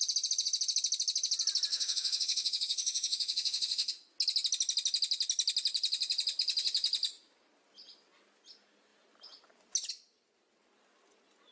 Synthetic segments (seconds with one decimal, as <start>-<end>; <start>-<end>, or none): 1.7-3.9